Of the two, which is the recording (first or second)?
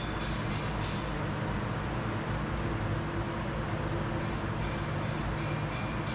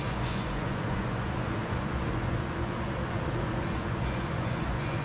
first